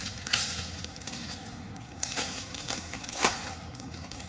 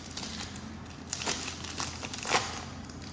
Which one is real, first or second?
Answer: second